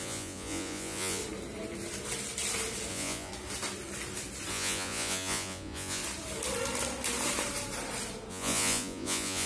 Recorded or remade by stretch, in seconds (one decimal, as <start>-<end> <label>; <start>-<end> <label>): 0.0-1.2 remade; 1.2-2.9 recorded; 2.9-3.3 remade; 3.3-4.5 recorded; 4.5-6.0 remade; 6.0-8.3 recorded; 8.3-9.5 remade